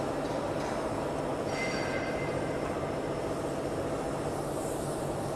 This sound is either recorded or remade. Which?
remade